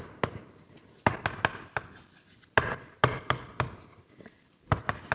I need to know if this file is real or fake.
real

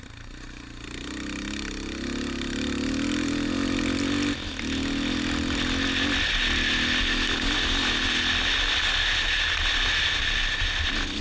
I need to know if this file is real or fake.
real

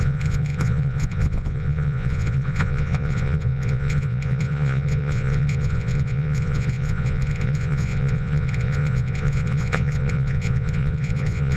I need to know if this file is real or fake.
fake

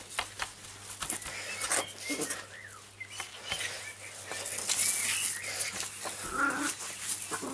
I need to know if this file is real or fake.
real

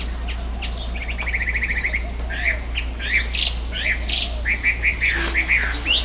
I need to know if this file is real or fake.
real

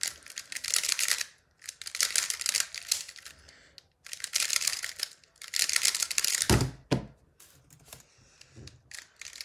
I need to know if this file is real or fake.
real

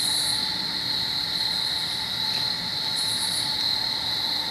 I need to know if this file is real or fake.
real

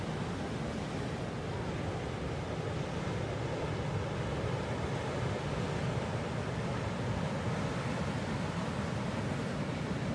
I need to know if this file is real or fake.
real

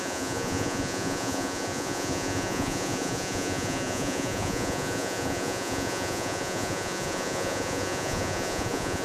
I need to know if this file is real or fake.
fake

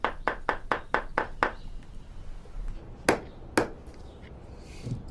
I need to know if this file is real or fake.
real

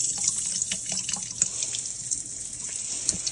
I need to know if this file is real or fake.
real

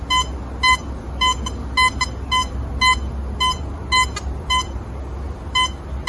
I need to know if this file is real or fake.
real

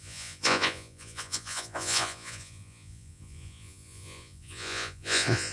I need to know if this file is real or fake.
fake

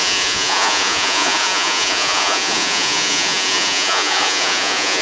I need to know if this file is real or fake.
fake